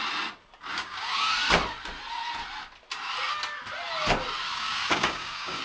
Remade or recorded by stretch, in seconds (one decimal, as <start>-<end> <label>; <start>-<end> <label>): 0.0-0.7 recorded; 0.7-1.3 remade; 1.3-4.5 recorded; 4.5-5.6 remade